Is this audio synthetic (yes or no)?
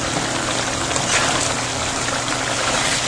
no